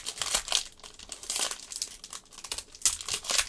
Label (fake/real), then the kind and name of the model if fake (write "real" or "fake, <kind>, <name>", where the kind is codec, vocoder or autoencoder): real